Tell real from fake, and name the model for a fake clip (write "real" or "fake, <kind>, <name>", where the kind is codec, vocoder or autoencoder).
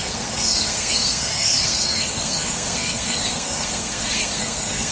fake, codec, SNAC